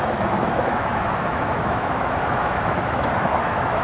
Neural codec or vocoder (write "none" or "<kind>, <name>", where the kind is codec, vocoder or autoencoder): autoencoder, DAC-VAE